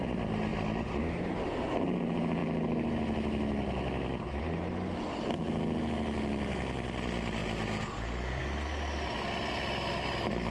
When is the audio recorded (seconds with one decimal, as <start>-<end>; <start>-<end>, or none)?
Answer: 0.0-7.4; 8.4-10.5